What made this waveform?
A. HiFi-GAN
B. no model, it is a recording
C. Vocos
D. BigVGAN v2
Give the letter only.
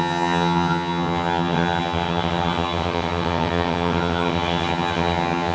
A